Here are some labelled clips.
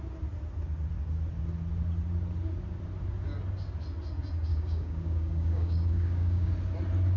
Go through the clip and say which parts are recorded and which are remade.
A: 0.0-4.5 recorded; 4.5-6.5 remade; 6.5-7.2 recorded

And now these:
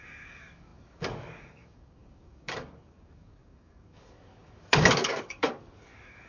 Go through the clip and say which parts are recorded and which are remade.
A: 0.0-6.3 remade